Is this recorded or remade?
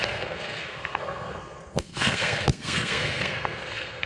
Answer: remade